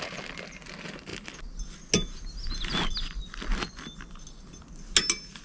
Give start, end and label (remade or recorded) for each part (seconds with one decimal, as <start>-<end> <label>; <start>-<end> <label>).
0.0-5.4 recorded